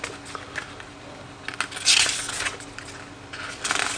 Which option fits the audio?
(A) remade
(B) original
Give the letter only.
B